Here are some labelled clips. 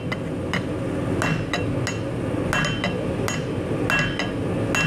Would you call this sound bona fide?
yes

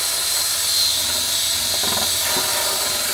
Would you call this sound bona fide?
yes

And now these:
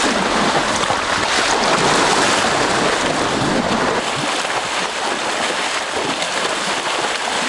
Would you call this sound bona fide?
yes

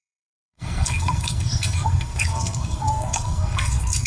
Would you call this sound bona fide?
no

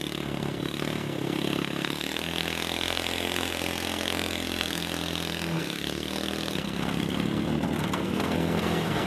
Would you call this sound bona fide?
no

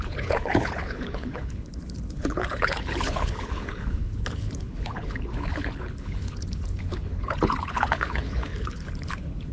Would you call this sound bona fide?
no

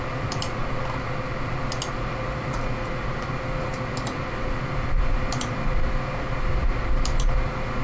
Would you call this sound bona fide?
yes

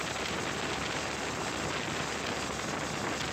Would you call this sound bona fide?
yes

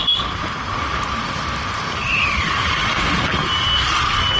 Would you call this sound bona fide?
yes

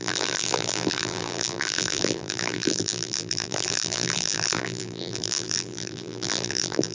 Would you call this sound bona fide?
no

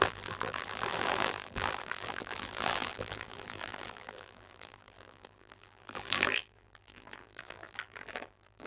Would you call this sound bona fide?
no